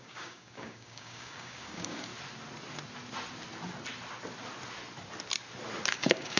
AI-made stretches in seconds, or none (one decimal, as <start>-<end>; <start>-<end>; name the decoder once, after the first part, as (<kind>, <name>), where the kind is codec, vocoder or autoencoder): 0.0-2.1 (codec, DAC); 5.9-6.4